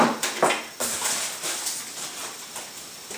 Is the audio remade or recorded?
recorded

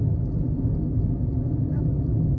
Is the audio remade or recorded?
recorded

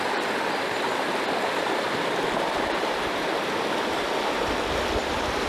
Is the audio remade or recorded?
recorded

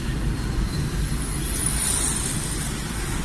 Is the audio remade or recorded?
recorded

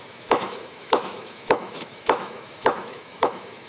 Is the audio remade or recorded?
remade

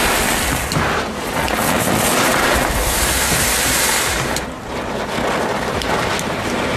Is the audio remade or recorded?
recorded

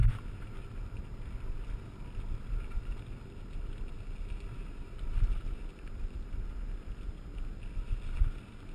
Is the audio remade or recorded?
recorded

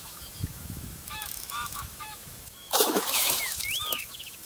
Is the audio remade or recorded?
remade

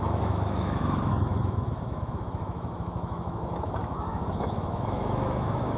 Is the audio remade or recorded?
remade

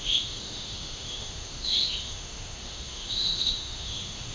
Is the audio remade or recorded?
remade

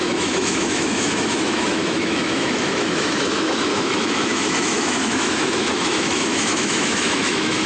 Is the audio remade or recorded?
remade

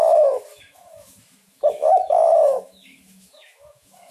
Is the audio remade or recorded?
remade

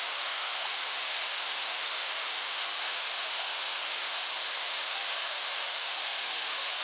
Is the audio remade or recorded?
remade